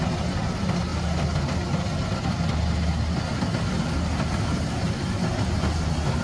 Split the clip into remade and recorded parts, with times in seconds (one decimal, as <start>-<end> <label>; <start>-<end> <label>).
0.0-6.2 recorded